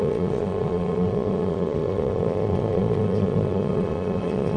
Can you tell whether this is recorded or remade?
remade